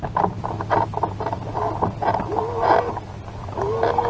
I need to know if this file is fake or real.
real